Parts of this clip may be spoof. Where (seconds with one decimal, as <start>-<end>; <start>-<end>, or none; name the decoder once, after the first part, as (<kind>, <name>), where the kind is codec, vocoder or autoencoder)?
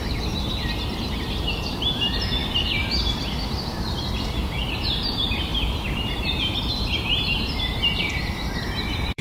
0.0-2.4 (vocoder, BigVGAN v2); 4.2-5.5; 6.1-9.2